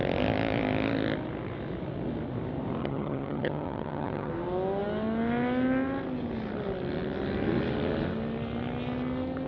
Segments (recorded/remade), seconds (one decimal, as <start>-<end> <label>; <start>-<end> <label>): 0.0-2.8 recorded; 2.8-4.3 remade; 4.3-9.5 recorded